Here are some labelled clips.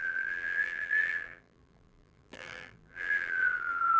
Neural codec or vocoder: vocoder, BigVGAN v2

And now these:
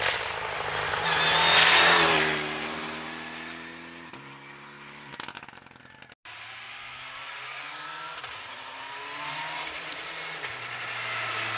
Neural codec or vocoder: none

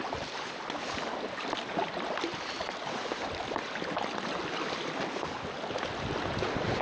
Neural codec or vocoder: none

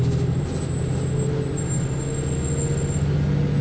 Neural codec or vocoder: none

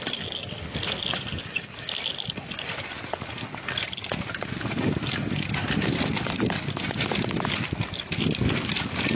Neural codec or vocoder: none